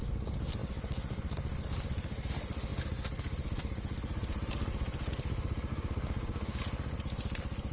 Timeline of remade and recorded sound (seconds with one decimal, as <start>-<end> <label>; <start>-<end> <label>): 0.0-5.7 recorded; 5.7-6.6 remade; 6.6-7.7 recorded